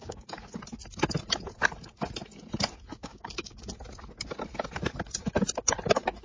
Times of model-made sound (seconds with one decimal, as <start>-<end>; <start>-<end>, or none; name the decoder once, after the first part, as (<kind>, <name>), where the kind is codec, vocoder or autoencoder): 0.0-0.6 (codec, DAC); 2.9-3.7